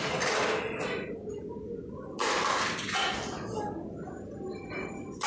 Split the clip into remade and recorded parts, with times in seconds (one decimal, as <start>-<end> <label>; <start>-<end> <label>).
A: 0.0-5.3 recorded